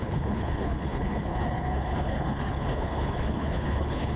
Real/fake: fake